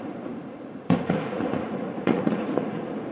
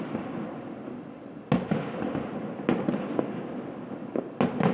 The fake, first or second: first